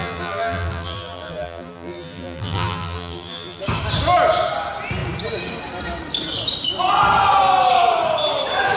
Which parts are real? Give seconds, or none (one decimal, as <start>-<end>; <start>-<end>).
3.6-8.8